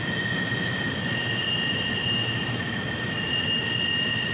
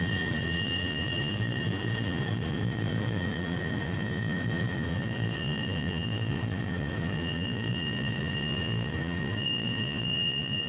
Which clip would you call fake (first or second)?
second